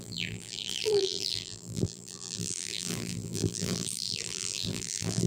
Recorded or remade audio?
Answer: remade